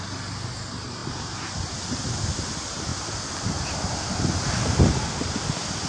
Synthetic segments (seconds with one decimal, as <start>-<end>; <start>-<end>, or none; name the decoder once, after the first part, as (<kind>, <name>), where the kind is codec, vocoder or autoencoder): none